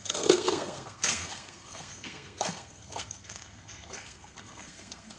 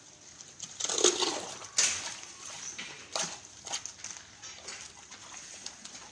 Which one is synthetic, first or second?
first